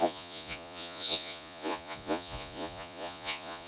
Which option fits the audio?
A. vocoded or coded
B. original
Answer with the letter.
A